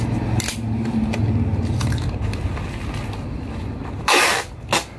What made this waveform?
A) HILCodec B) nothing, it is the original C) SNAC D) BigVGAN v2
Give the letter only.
B